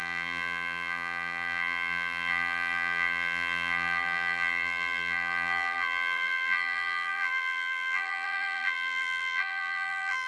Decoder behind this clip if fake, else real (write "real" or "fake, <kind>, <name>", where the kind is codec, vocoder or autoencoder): fake, vocoder, BigVGAN v2